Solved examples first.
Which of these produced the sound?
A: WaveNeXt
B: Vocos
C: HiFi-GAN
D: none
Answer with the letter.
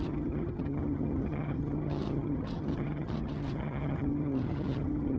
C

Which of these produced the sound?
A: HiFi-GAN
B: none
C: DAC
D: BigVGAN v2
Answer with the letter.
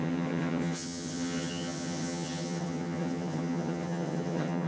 A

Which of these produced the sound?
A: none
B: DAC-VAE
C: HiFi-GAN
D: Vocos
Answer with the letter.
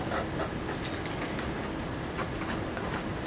A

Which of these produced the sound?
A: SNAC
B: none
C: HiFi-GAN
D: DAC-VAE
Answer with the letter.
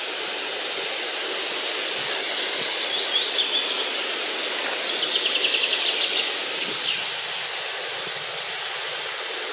B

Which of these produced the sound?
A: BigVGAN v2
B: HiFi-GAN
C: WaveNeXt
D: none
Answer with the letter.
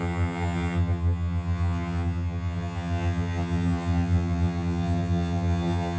B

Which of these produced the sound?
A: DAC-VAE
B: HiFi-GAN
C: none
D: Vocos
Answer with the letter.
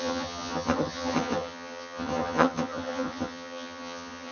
B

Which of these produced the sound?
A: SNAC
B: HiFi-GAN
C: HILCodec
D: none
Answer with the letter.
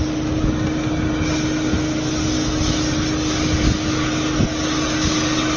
D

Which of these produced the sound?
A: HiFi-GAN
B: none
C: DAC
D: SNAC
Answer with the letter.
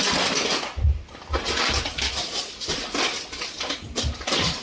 B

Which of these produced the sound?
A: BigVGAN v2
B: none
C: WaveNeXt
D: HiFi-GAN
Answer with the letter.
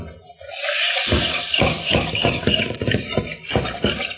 B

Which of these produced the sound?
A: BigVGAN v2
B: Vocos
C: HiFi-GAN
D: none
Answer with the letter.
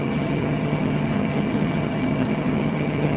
C